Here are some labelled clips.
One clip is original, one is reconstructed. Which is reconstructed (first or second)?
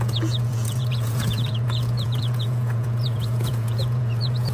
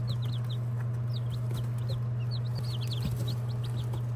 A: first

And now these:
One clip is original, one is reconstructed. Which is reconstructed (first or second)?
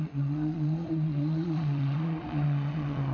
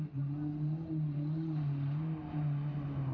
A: first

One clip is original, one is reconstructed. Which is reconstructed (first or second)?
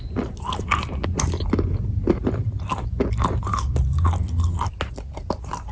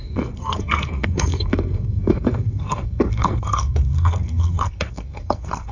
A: second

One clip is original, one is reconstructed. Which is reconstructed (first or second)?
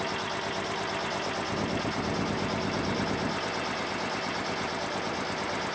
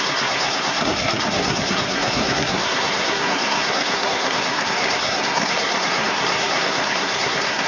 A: second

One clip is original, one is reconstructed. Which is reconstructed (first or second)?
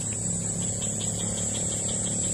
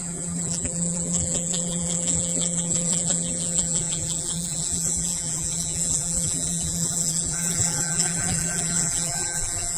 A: second